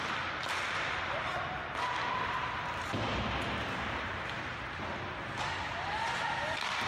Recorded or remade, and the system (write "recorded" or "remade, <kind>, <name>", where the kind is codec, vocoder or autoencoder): recorded